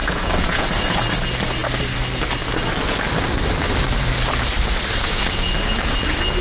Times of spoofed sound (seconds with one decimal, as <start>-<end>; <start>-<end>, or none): 0.0-1.0; 5.0-5.5